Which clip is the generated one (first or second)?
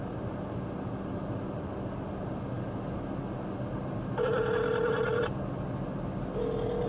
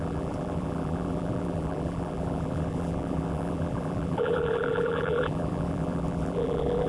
second